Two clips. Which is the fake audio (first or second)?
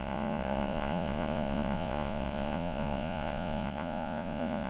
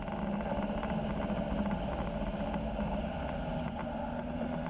first